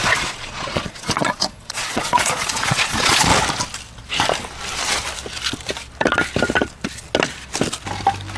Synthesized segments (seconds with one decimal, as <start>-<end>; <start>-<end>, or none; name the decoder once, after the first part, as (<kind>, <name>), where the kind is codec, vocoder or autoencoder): 0.0-3.3 (vocoder, Vocos)